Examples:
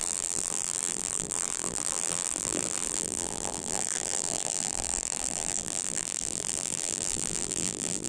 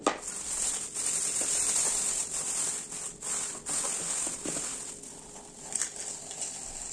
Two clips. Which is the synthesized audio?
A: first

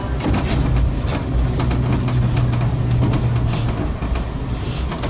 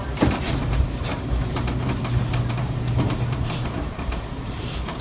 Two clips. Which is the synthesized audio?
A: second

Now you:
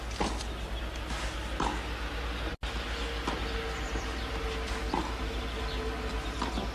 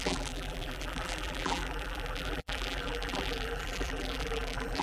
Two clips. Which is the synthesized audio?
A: second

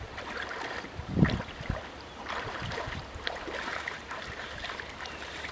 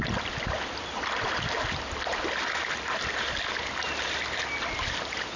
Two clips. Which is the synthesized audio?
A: first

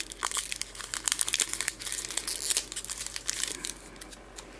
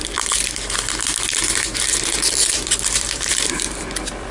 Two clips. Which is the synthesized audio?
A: second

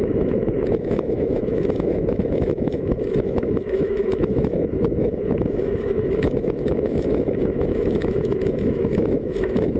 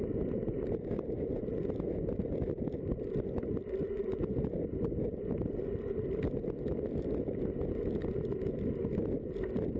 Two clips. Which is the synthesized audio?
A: first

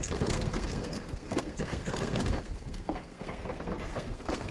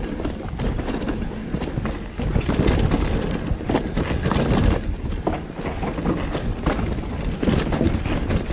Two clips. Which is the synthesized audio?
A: first